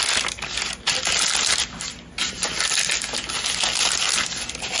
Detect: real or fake real